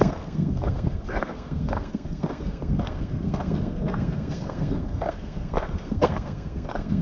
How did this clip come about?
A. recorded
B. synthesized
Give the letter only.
B